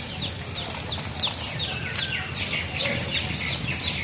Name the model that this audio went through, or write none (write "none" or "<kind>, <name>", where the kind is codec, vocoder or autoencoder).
none